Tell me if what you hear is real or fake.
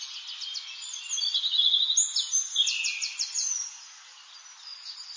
real